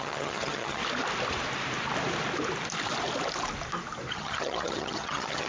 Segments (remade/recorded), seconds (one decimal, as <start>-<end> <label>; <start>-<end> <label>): 0.0-0.8 remade; 0.8-4.1 recorded; 4.1-5.5 remade